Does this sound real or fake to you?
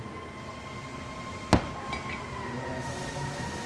real